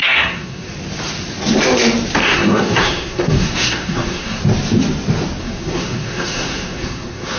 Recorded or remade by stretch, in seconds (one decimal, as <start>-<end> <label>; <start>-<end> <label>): 0.0-0.7 remade; 0.7-2.2 recorded; 2.2-4.4 remade; 4.4-5.4 recorded; 5.4-7.4 remade